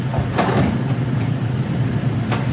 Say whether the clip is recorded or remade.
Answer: recorded